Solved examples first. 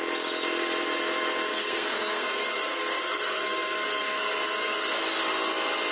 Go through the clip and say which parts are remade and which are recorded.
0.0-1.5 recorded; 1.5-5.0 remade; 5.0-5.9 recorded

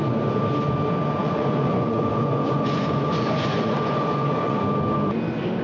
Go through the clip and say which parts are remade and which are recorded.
0.0-1.2 recorded; 1.2-4.6 remade; 4.6-5.6 recorded

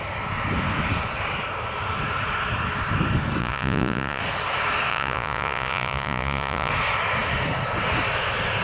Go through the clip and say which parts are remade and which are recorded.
0.0-3.4 recorded; 3.4-4.2 remade; 4.2-4.9 recorded; 4.9-6.7 remade; 6.7-8.6 recorded

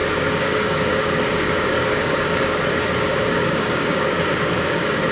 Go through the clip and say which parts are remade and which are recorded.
0.0-5.1 remade